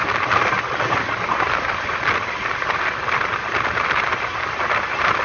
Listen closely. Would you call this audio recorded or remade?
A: recorded